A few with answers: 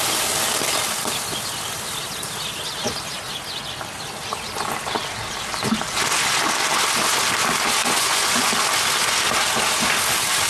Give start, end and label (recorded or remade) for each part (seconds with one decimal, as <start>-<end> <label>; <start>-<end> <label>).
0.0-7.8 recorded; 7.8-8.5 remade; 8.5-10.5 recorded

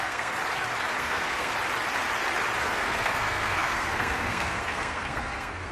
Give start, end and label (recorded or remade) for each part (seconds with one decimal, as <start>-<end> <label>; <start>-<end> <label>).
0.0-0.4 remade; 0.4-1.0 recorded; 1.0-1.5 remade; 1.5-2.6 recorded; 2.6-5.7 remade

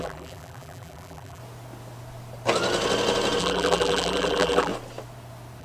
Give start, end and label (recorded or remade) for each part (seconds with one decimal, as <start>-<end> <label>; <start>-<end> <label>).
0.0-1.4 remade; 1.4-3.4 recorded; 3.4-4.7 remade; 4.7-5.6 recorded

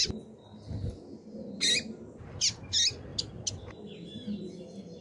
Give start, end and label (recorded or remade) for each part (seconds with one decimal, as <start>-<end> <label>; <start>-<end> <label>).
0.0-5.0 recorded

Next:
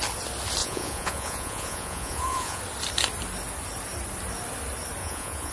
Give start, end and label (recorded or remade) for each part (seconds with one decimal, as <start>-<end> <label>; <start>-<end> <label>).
0.0-0.6 recorded; 0.6-2.6 remade; 2.6-5.0 recorded; 5.0-5.5 remade

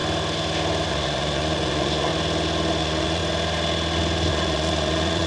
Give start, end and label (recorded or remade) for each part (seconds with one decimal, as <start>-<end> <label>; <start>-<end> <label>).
0.0-0.9 recorded; 0.9-2.1 remade; 2.1-2.8 recorded; 2.8-3.2 remade; 3.2-4.3 recorded; 4.3-5.3 remade